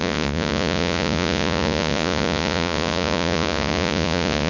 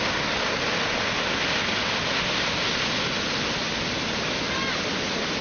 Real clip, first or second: second